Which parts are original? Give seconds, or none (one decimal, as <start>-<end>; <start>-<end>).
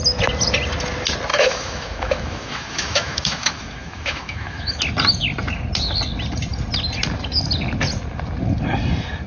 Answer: 0.0-1.3; 4.8-9.3